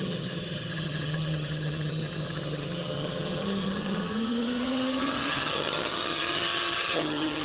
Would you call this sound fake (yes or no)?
yes